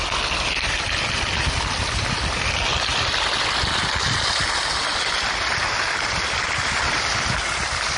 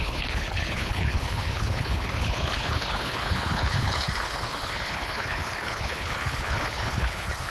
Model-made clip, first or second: second